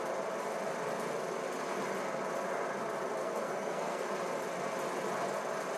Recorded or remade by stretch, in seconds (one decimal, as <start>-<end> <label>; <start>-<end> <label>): 0.0-3.2 recorded; 3.2-4.1 remade; 4.1-5.8 recorded